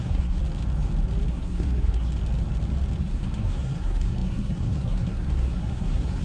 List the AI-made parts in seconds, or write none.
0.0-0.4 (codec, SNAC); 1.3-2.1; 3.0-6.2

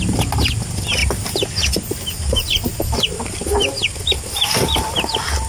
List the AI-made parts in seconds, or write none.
none

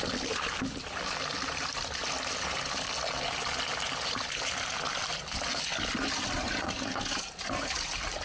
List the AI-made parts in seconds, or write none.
none

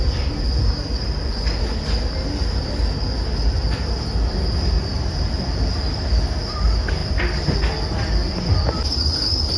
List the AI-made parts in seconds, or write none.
none

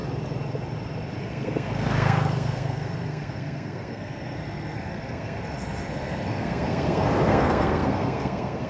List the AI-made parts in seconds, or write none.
1.2-8.7 (codec, SNAC)

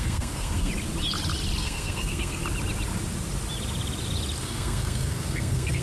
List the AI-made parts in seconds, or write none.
0.0-0.7 (codec, SNAC); 1.6-2.4; 4.4-5.8

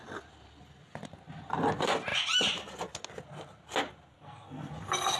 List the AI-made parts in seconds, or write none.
4.1-4.7 (codec, SNAC)

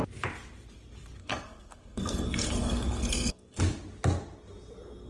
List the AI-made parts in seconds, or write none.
1.2-3.6 (codec, SNAC)